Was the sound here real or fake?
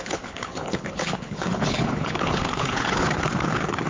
fake